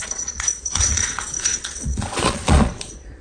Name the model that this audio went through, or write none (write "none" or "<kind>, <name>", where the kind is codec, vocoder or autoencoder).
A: vocoder, Vocos